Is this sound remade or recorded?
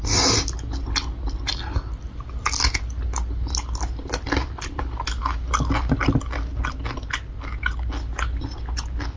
recorded